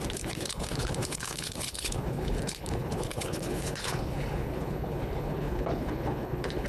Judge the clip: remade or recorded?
remade